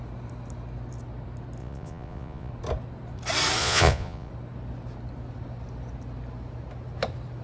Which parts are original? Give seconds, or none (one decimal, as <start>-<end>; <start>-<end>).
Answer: 0.0-1.6; 2.5-3.6; 4.3-7.4

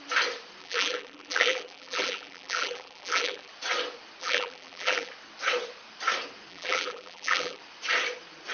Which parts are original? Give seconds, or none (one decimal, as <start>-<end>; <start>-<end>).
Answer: 0.0-0.6; 3.5-4.2; 5.1-6.5; 7.6-8.5